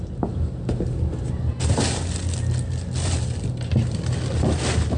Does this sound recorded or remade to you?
remade